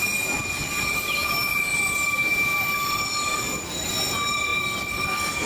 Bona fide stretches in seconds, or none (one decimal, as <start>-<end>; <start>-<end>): 0.0-5.5